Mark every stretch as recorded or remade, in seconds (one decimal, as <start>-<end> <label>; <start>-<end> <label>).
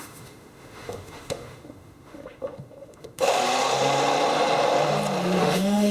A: 0.0-3.4 remade; 3.4-5.4 recorded; 5.4-5.9 remade